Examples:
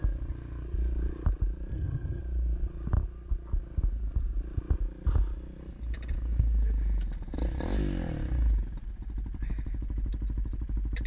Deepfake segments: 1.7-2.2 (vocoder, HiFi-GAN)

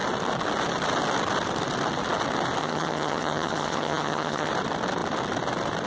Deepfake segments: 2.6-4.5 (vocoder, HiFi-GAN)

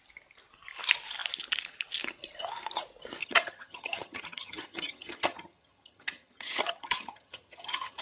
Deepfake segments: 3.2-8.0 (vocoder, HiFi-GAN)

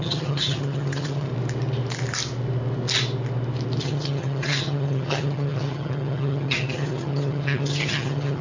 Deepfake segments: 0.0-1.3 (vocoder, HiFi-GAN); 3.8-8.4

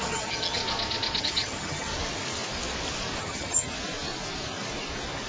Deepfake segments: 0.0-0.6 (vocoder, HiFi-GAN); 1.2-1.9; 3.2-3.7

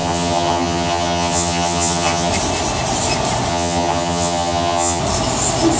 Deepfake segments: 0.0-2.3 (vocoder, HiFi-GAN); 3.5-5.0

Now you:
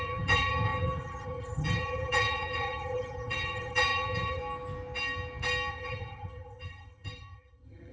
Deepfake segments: 0.0-4.4 (vocoder, HiFi-GAN); 5.7-7.9